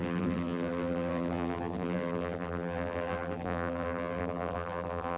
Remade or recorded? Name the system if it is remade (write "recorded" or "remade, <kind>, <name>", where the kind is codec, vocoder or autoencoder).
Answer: remade, vocoder, BigVGAN v2